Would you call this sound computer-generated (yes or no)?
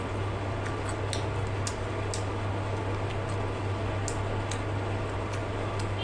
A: no